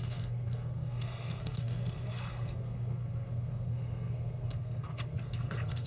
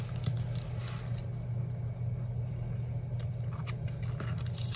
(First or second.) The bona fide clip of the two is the second